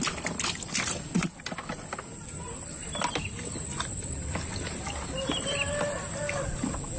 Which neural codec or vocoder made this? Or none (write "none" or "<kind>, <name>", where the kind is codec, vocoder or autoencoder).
none